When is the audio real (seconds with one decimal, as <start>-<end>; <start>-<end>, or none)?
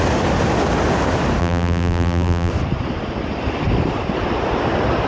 0.0-1.4; 2.5-5.1